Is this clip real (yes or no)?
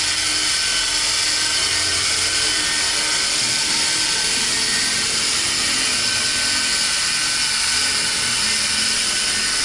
yes